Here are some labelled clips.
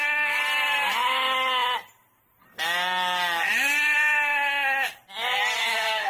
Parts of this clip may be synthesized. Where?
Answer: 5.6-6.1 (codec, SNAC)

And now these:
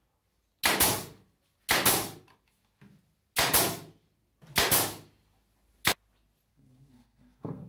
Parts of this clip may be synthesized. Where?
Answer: 6.5-7.7 (codec, SNAC)

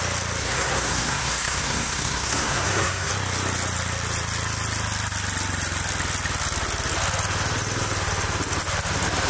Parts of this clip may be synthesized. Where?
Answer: 0.4-3.1 (codec, SNAC)